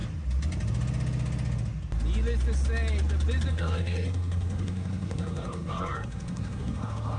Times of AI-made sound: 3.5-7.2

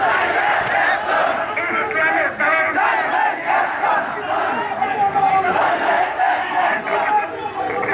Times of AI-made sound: 5.3-6.7

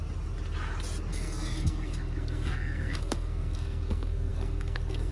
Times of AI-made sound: 1.1-5.1